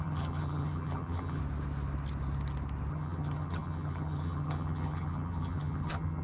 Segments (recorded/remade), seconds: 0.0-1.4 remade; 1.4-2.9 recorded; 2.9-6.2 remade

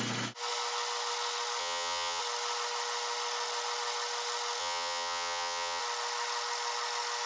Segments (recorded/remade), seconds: 0.0-1.6 recorded; 1.6-2.2 remade; 2.2-4.6 recorded; 4.6-5.8 remade; 5.8-7.3 recorded

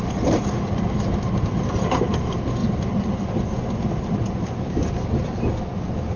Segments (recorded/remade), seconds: 0.0-6.2 recorded

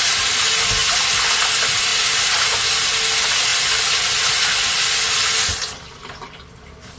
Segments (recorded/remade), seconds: 0.0-7.0 recorded

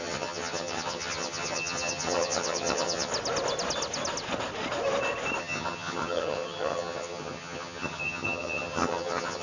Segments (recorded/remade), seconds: 0.0-3.1 remade; 3.1-5.4 recorded; 5.4-9.4 remade

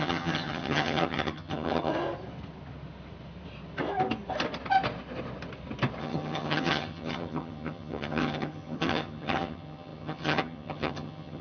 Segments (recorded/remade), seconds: 0.0-1.9 remade; 1.9-6.0 recorded; 6.0-11.4 remade

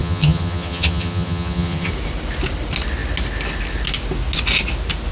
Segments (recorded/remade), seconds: 0.0-1.9 remade; 1.9-5.1 recorded

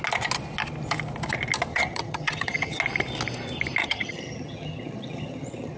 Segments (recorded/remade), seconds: 0.0-1.7 recorded; 1.7-2.8 remade; 2.8-3.8 recorded; 3.8-5.8 remade